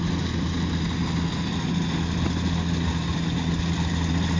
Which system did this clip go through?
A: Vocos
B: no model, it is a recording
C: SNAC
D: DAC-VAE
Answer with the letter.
B